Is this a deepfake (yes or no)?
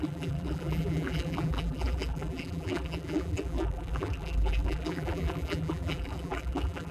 yes